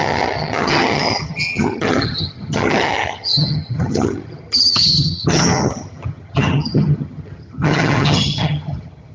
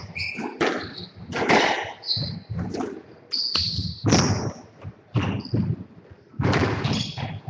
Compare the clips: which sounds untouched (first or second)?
second